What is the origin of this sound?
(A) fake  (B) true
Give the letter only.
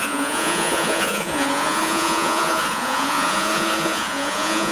A